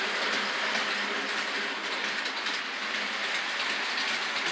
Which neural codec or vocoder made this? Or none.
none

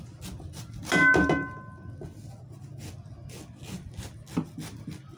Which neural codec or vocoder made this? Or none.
none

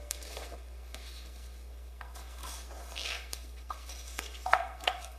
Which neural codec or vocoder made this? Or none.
codec, SNAC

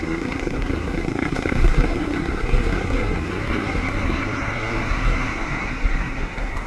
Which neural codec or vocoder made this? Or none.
codec, SNAC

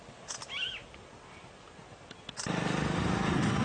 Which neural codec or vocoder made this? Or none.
none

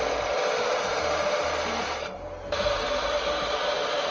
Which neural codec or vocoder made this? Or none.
vocoder, BigVGAN v2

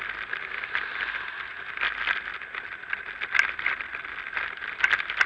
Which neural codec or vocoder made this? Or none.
none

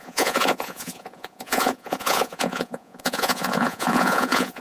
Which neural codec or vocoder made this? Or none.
vocoder, Vocos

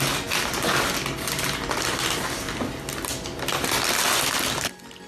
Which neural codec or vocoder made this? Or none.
none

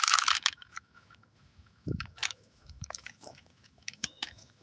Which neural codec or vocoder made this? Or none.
autoencoder, DAC-VAE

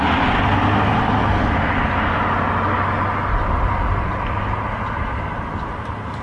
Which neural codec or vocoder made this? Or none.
none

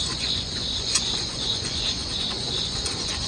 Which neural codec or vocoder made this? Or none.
vocoder, Vocos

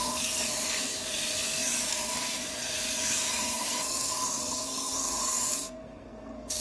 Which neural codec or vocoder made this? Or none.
codec, SNAC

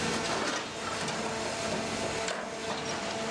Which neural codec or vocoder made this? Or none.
none